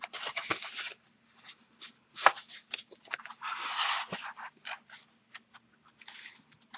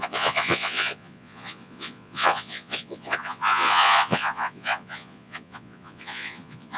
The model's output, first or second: second